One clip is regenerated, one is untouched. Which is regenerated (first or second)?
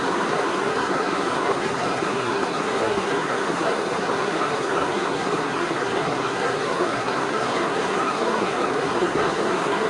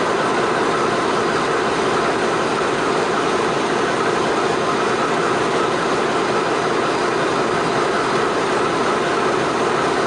first